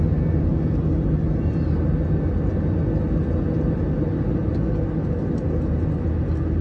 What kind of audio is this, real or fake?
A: real